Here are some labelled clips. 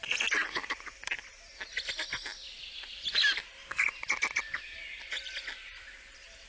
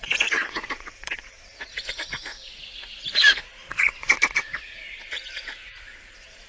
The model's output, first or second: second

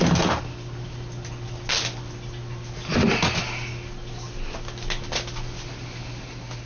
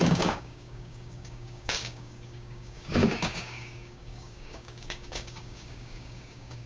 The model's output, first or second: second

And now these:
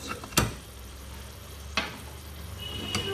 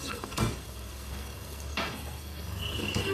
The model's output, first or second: second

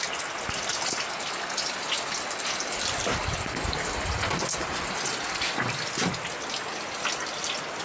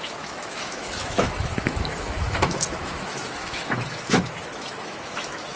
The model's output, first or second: second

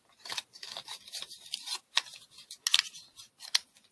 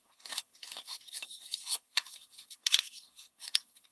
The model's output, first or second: second